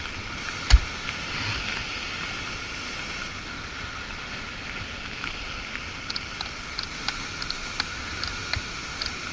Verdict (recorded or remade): recorded